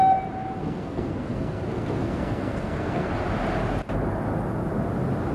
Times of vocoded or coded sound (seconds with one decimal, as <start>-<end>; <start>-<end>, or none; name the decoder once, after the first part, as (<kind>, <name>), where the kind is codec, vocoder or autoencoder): 0.6-3.1 (codec, SNAC)